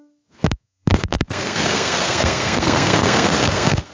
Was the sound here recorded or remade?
remade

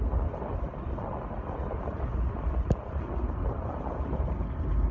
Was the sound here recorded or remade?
recorded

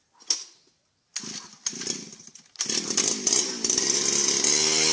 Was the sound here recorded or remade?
recorded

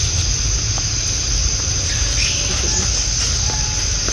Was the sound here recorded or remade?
recorded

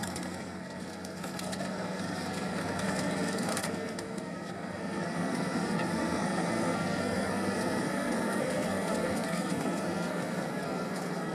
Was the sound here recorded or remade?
remade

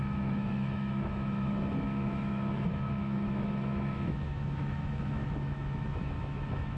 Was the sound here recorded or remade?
remade